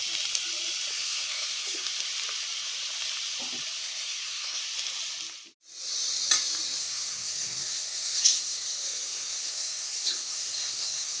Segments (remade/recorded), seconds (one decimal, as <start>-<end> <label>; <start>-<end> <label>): 0.0-0.9 recorded; 0.9-1.9 remade; 1.9-3.8 recorded; 3.8-4.6 remade; 4.6-6.8 recorded; 6.8-11.2 remade